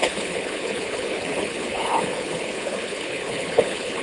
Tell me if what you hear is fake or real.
fake